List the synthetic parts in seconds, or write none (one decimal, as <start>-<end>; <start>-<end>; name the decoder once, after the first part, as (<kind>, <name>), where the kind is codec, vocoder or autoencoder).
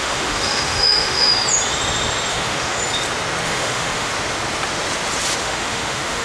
0.0-1.3 (autoencoder, DAC-VAE); 2.3-2.8; 3.4-4.1; 5.4-6.2